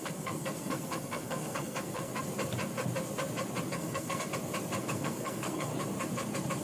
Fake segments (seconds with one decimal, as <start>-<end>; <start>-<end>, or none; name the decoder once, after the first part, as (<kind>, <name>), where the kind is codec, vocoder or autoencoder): 0.0-2.1 (codec, SNAC); 3.7-4.3; 4.8-5.7